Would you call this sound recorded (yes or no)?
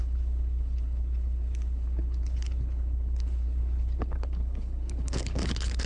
no